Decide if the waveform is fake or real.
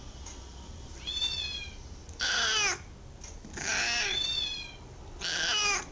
real